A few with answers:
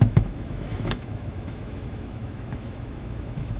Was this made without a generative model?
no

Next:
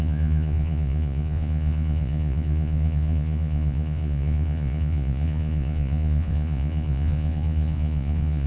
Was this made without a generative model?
no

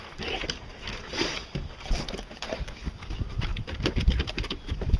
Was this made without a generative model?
yes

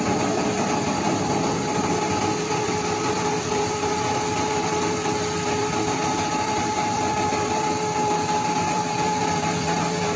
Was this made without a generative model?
no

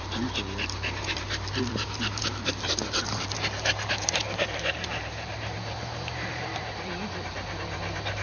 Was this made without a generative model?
no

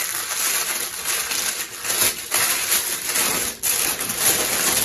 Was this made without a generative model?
yes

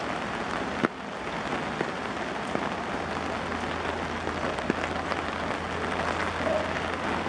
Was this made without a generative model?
yes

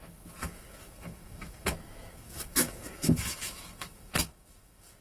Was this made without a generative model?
no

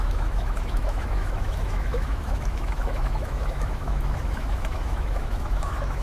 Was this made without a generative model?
no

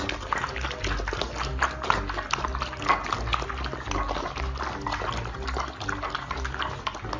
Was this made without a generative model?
yes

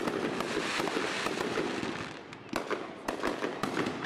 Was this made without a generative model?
yes